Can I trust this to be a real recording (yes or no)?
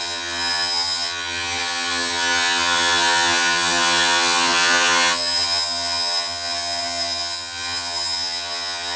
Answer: no